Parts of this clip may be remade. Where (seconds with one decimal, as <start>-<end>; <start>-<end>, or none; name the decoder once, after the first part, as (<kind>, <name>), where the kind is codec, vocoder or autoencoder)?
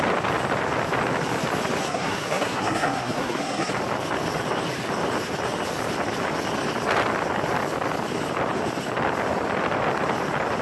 1.8-3.7 (codec, SNAC)